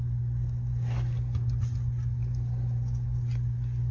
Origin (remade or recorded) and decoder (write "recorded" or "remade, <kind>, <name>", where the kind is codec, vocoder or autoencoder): recorded